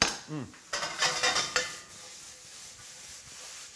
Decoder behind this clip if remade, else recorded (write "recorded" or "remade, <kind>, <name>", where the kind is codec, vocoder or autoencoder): recorded